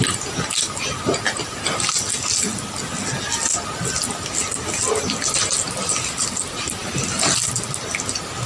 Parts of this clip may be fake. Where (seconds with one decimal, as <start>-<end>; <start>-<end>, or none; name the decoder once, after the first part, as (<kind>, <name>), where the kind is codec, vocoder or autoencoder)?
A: none